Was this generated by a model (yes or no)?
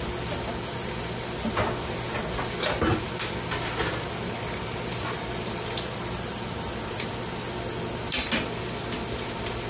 no